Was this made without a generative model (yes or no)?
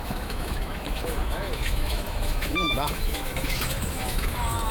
no